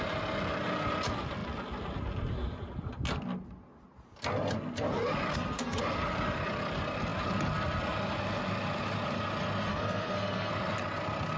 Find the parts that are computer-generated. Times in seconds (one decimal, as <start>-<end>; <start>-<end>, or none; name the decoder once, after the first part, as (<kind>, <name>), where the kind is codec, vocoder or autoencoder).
5.3-5.8 (codec, SNAC); 9.7-10.5